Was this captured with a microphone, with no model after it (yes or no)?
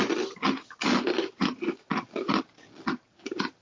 no